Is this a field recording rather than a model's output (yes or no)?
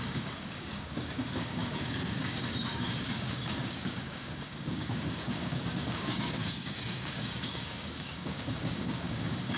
no